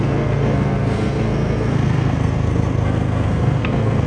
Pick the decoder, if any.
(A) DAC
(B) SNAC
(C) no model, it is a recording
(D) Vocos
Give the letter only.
B